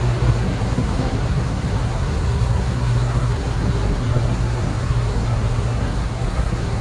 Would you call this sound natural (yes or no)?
no